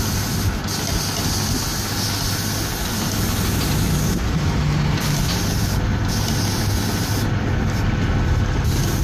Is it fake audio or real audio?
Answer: real